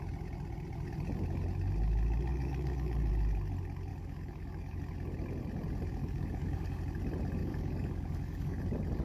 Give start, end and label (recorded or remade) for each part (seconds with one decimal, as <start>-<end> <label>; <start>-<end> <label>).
0.0-2.3 recorded; 2.3-3.1 remade; 3.1-3.9 recorded; 3.9-4.8 remade; 4.8-6.0 recorded; 6.0-6.8 remade; 6.8-7.4 recorded; 7.4-8.6 remade; 8.6-9.0 recorded